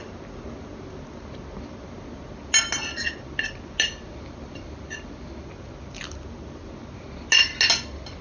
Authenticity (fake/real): real